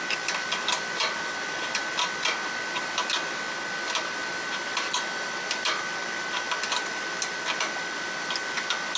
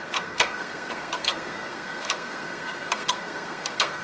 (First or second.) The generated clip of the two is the second